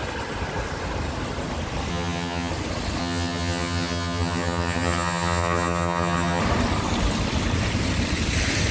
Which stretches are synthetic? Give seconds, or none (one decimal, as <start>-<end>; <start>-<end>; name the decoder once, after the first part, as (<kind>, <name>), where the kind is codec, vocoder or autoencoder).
1.9-2.5 (vocoder, HiFi-GAN); 3.0-6.4